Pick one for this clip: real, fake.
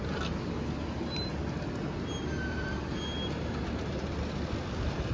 real